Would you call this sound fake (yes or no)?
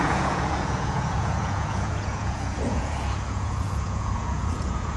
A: yes